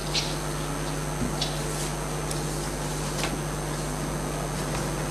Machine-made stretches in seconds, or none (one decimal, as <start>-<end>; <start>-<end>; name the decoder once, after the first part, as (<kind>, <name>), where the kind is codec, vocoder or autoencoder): none